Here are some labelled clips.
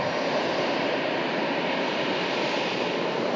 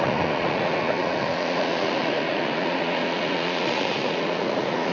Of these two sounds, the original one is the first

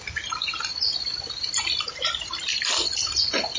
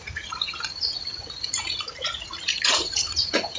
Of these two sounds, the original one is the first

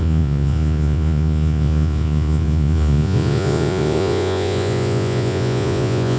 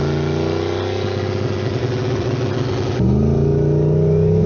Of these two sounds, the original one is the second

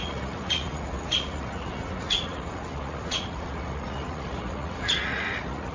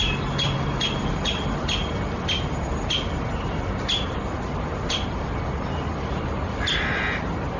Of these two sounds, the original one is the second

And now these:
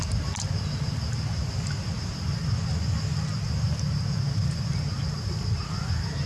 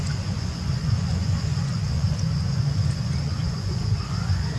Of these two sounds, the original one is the first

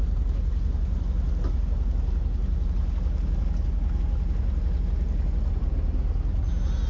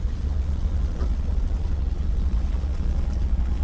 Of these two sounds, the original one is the first